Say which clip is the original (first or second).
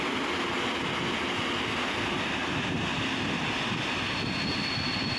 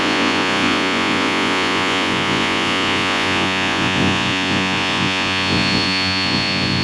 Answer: first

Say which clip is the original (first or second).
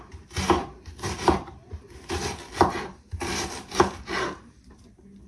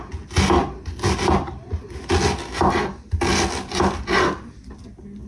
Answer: second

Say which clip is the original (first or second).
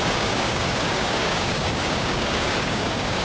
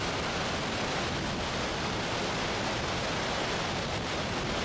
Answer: second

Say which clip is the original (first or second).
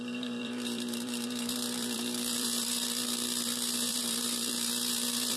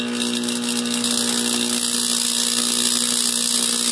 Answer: second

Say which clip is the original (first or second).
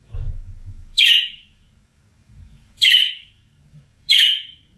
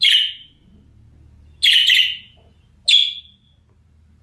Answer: second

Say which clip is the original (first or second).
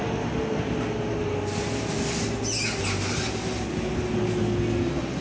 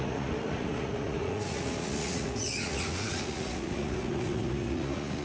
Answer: first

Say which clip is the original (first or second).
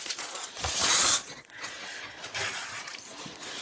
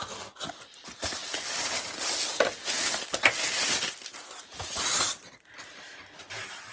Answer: second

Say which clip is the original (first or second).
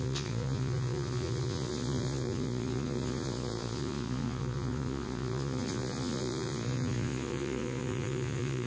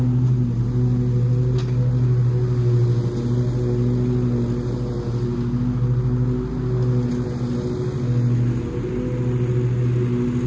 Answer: second